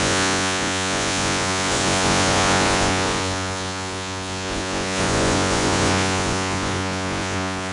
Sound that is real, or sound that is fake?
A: fake